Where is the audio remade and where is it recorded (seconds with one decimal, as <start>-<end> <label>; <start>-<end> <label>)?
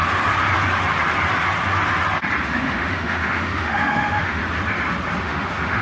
0.0-2.4 recorded; 2.4-4.4 remade; 4.4-5.2 recorded; 5.2-5.8 remade